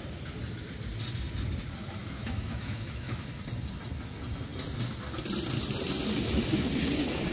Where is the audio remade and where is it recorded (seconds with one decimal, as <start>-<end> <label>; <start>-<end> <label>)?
0.0-2.0 recorded; 2.0-3.4 remade; 3.4-7.3 recorded